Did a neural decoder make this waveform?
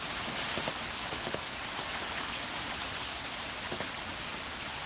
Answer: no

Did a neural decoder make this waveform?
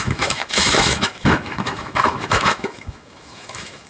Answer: yes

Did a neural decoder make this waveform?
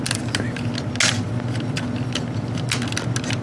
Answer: no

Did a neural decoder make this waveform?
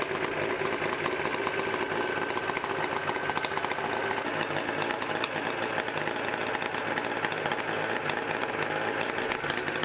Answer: no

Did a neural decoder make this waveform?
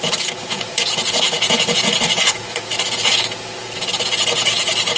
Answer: yes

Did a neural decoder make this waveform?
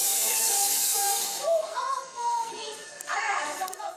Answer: yes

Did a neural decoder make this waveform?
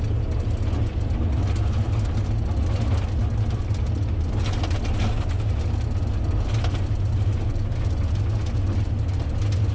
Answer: no